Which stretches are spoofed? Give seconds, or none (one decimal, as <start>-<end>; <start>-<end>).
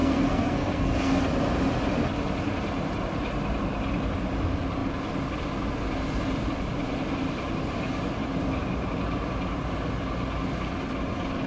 0.0-1.2